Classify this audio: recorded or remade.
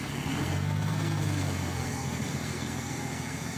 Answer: remade